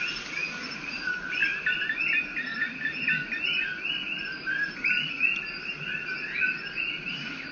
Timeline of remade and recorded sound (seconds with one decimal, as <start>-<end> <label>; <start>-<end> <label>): 0.0-7.5 recorded